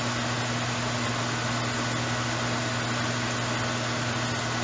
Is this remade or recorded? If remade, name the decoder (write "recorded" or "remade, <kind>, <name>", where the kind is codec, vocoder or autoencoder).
recorded